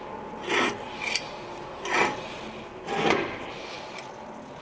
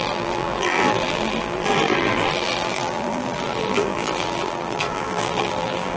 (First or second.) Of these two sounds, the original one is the first